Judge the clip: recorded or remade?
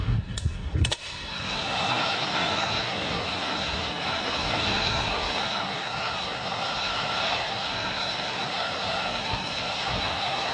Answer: remade